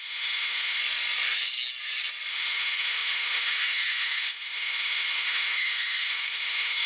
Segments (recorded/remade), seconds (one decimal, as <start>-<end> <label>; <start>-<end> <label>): 0.0-0.8 remade; 0.8-2.3 recorded; 2.3-6.9 remade